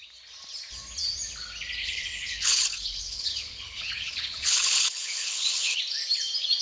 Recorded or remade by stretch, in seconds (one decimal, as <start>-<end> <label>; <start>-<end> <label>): 0.0-1.8 recorded; 1.8-5.8 remade; 5.8-6.6 recorded